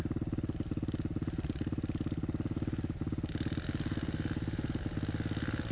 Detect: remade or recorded recorded